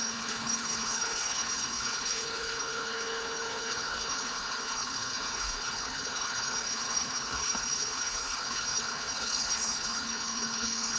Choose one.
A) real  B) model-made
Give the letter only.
B